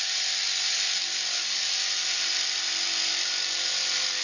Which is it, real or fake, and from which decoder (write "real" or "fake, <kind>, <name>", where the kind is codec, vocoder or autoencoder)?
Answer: real